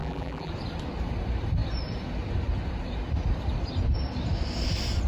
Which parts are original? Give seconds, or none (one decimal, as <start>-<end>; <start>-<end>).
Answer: 0.5-5.1